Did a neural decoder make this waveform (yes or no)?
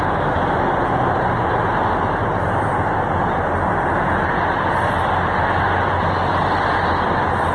no